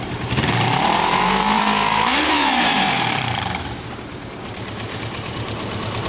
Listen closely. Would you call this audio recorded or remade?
remade